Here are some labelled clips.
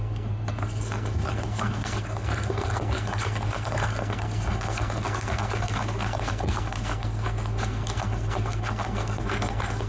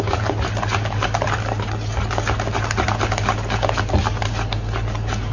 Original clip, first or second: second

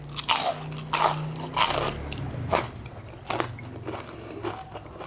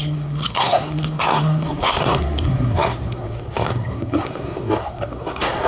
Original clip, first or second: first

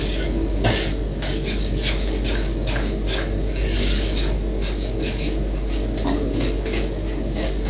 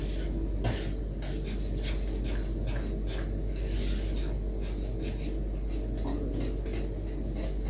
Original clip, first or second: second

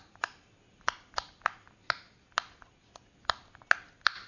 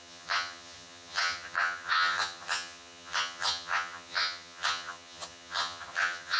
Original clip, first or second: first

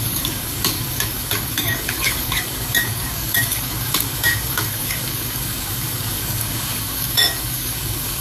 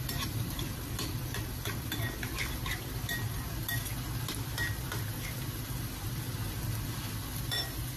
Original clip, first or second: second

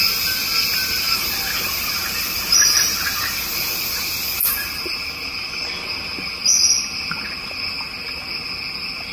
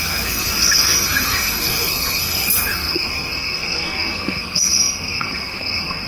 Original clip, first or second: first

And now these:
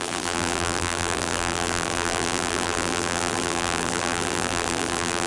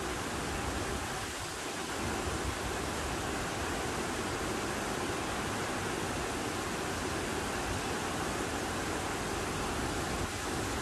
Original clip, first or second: second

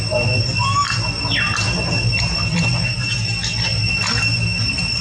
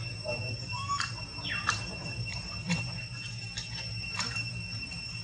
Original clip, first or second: first